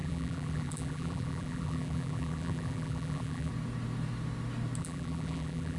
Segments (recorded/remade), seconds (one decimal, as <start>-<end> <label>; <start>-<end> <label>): 0.0-3.5 remade; 3.5-4.8 recorded; 4.8-5.8 remade